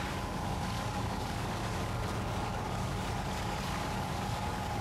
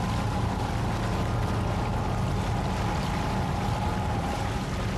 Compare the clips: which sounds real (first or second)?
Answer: second